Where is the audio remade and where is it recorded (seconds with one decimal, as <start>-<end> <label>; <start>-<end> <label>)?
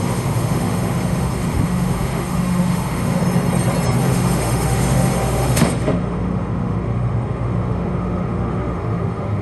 0.0-3.2 remade; 3.2-4.0 recorded; 4.0-9.4 remade